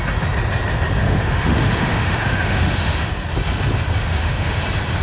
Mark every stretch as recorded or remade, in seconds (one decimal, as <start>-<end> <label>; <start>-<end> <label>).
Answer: 0.0-1.0 recorded; 1.0-3.1 remade; 3.1-4.0 recorded; 4.0-4.6 remade; 4.6-5.0 recorded